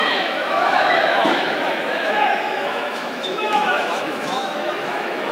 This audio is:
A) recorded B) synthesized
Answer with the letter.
B